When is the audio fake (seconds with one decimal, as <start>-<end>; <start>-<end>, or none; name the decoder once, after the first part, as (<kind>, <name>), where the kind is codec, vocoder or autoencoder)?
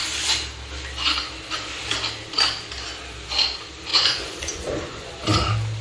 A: 3.9-5.1 (vocoder, Vocos)